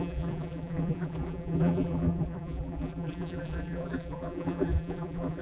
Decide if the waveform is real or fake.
fake